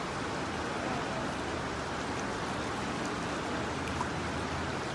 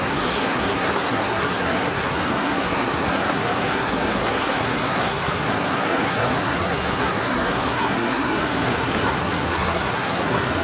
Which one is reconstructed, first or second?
second